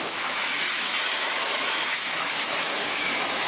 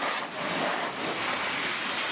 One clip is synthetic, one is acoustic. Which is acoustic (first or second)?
second